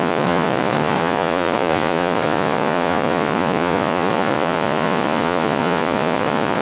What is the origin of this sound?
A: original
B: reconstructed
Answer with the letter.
B